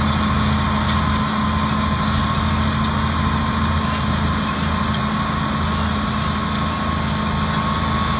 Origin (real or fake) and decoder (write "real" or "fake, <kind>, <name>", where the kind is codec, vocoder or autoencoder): real